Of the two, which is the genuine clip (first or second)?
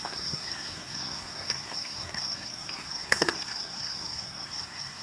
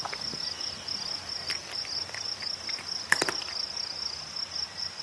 second